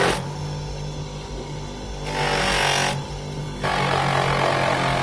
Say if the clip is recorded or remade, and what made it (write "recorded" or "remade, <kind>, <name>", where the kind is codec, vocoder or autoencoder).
recorded